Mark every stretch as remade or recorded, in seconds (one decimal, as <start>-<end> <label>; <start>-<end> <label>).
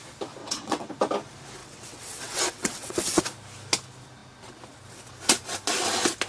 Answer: 0.0-0.4 recorded; 0.4-0.9 remade; 0.9-1.6 recorded; 1.6-3.2 remade; 3.2-6.3 recorded